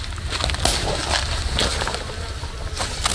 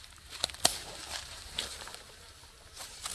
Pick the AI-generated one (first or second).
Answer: second